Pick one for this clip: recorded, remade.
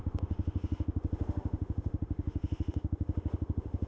remade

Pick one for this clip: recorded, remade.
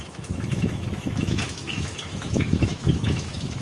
remade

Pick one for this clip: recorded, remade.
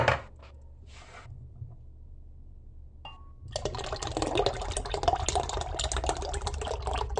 recorded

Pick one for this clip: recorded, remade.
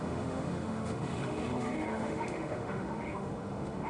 remade